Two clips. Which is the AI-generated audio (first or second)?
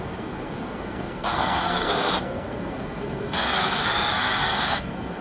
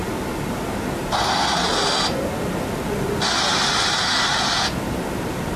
first